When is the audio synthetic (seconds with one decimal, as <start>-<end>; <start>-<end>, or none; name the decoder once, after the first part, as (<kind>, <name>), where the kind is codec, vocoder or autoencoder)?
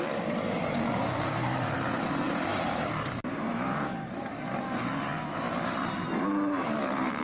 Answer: 0.0-7.2 (vocoder, BigVGAN v2)